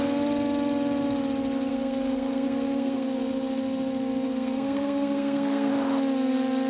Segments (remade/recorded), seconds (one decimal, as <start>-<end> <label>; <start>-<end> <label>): 0.0-1.7 recorded; 1.7-5.7 remade; 5.7-6.7 recorded